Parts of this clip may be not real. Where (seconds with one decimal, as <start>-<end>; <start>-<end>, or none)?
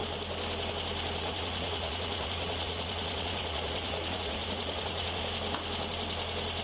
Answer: 1.2-5.2